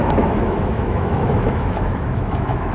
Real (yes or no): no